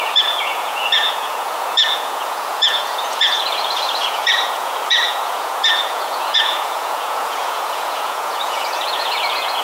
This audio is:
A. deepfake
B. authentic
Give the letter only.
A